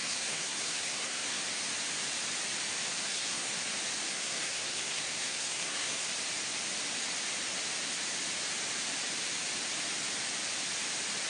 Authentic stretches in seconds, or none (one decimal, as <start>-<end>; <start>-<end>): 1.4-3.0; 3.5-4.1; 6.1-11.3